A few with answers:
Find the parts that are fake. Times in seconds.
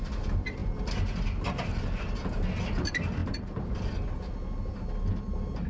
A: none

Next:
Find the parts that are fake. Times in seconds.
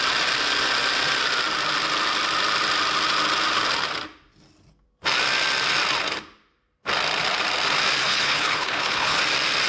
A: 8.0-9.2 (codec, HILCodec)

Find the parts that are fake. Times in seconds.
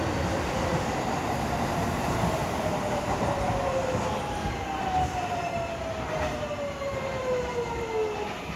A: 2.4-3.6 (vocoder, BigVGAN v2)